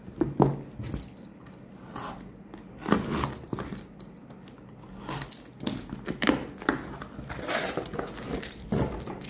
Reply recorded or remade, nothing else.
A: recorded